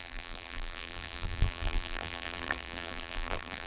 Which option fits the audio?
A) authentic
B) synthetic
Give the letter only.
B